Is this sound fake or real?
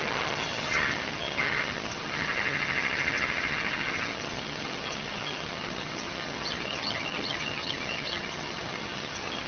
fake